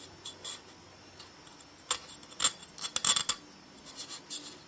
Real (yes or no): yes